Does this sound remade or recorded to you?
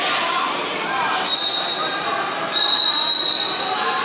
recorded